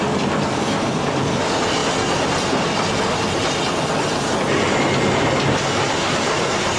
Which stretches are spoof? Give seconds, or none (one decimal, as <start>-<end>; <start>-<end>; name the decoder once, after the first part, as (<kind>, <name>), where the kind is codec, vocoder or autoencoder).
none